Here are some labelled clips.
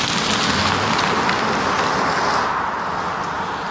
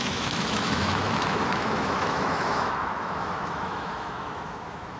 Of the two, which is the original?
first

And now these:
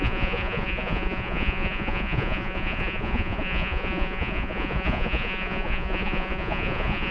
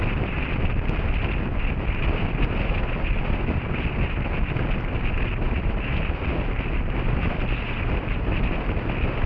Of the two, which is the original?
second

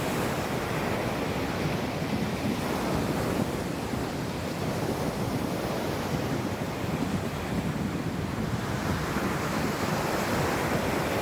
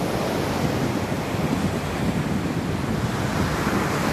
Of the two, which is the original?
second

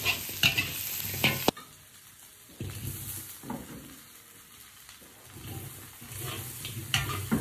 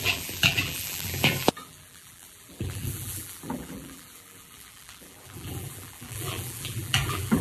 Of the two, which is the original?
first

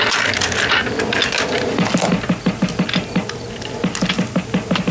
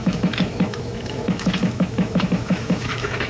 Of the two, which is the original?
first